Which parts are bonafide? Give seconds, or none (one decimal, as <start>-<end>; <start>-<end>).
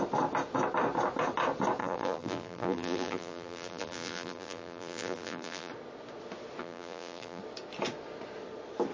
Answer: 0.0-1.8; 5.7-6.6; 7.4-8.9